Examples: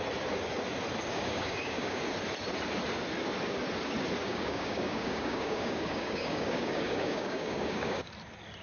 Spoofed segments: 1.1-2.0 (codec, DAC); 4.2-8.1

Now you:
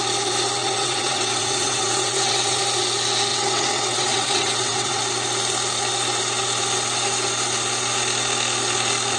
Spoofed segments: 0.6-2.6 (vocoder, WaveNeXt); 3.3-5.0

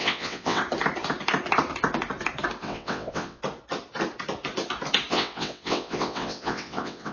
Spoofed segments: 0.0-0.6 (vocoder, WaveNeXt); 2.6-3.4; 5.1-7.1

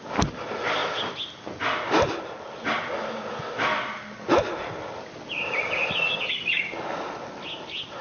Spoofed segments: none

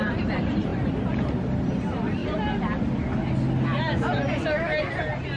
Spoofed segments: 0.0-2.2 (vocoder, BigVGAN v2)

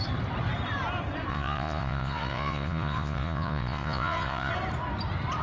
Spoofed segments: 1.3-4.5 (vocoder, Vocos)